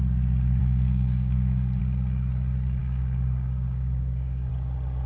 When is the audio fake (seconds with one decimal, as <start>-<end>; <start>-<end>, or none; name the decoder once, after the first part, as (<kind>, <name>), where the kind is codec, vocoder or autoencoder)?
0.6-1.8 (codec, DAC); 2.8-4.5